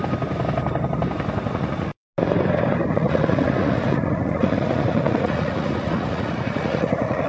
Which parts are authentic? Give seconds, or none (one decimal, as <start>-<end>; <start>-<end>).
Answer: 0.0-1.5; 1.9-2.9